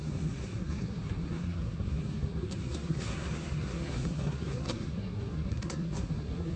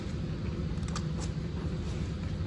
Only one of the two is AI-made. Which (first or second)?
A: first